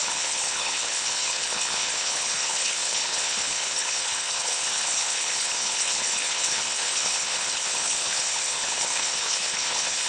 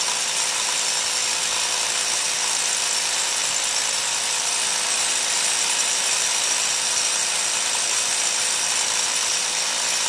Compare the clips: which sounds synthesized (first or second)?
first